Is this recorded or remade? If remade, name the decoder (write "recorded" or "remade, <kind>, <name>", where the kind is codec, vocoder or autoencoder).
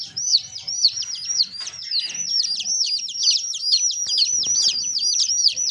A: remade, vocoder, BigVGAN v2